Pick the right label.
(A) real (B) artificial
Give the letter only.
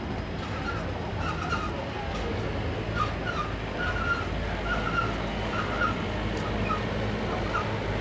A